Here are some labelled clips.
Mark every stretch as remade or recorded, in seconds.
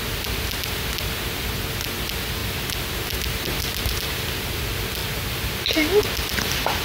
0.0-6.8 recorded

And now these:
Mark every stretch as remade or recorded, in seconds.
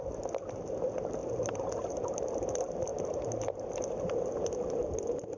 0.0-1.2 recorded; 1.2-2.3 remade; 2.3-5.4 recorded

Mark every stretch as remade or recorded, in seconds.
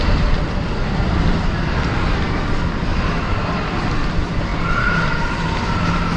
0.0-6.2 remade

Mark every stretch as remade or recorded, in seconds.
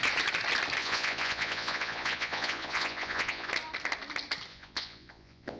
0.0-0.8 recorded; 0.8-3.5 remade; 3.5-4.5 recorded; 4.5-5.6 remade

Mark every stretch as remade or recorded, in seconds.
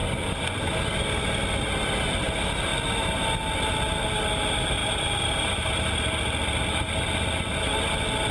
0.0-8.3 recorded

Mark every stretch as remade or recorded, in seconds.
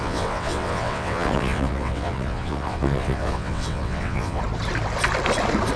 0.0-4.4 remade; 4.4-5.8 recorded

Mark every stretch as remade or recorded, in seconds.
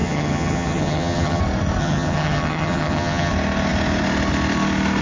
0.0-1.4 remade; 1.4-1.8 recorded; 1.8-3.3 remade; 3.3-5.0 recorded